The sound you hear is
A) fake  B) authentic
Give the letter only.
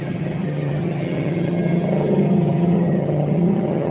A